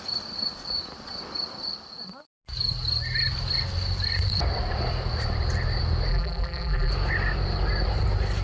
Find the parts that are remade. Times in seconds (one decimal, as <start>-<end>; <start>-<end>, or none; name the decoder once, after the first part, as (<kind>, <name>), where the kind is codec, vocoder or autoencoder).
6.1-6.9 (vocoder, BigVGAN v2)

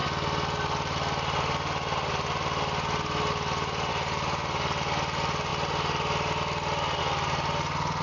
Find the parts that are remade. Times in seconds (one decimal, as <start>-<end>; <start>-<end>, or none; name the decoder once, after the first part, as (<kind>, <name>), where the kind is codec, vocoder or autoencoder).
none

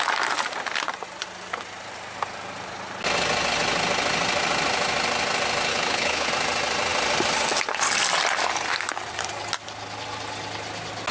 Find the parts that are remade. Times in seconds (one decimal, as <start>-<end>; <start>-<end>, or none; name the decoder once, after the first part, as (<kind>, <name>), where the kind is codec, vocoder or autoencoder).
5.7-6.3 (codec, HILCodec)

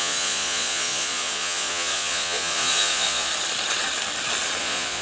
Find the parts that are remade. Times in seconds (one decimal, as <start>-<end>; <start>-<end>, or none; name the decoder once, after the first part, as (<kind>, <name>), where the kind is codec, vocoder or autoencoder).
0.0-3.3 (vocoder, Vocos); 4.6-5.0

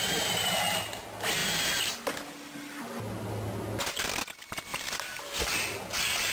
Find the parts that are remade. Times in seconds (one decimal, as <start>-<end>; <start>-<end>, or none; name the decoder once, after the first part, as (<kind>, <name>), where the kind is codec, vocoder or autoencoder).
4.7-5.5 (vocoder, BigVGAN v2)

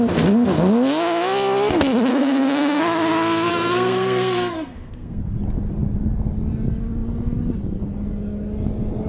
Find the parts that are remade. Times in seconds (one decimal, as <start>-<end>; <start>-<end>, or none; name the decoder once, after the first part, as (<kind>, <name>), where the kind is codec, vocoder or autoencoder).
2.1-2.8 (codec, SNAC); 3.5-5.2

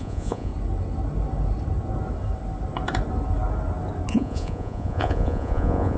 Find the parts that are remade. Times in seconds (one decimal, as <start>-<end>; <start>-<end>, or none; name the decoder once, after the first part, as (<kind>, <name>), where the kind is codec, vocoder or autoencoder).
0.0-0.5 (vocoder, Vocos); 4.1-6.0